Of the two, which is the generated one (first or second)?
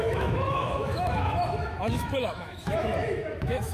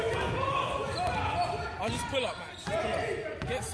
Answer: first